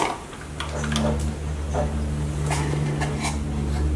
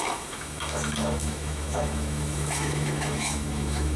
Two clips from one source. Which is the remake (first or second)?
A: second